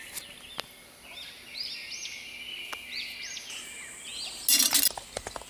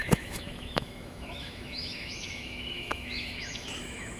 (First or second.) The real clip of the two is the first